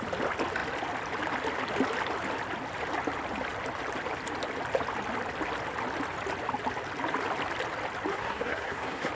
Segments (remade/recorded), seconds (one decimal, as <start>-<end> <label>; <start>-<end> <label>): 0.0-8.1 recorded; 8.1-9.1 remade